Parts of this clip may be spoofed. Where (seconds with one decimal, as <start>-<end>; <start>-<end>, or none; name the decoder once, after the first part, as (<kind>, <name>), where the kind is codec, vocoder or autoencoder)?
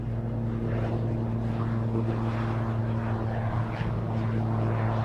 none